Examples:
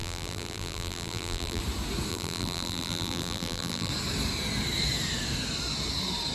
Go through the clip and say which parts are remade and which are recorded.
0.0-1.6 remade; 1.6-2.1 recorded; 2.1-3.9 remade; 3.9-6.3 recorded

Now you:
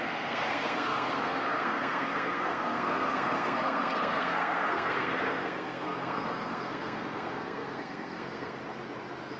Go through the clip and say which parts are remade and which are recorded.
0.0-8.6 remade; 8.6-9.4 recorded